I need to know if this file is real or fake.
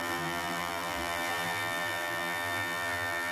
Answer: fake